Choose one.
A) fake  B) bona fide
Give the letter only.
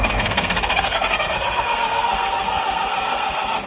A